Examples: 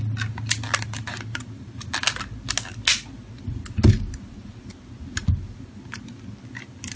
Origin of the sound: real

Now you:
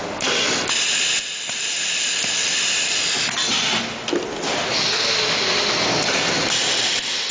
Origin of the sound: real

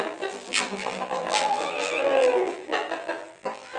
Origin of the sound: fake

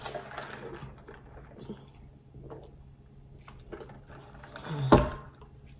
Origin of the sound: real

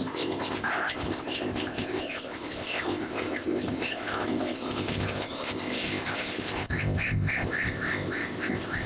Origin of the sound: fake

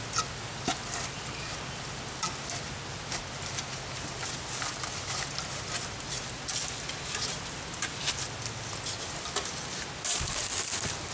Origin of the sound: real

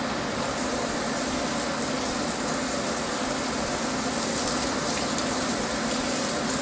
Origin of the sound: real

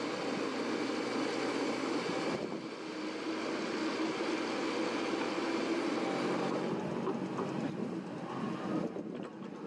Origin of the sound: real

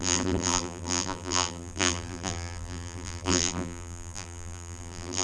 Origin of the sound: fake